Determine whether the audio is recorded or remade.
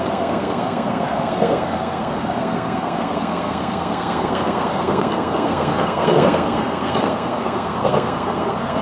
remade